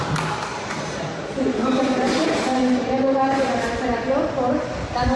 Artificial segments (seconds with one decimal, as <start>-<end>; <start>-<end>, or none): 0.5-3.6